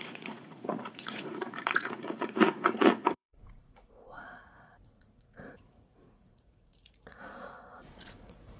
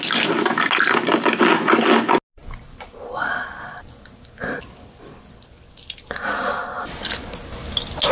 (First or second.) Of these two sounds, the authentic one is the second